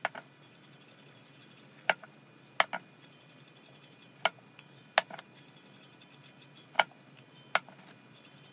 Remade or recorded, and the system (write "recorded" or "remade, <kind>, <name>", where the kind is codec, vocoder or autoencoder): recorded